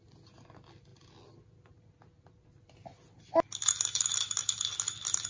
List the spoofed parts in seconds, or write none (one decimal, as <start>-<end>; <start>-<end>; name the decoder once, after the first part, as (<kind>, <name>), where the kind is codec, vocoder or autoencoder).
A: none